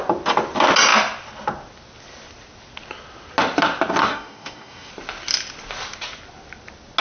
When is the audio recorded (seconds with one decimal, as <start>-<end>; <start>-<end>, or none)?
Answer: 0.0-4.0; 4.9-7.0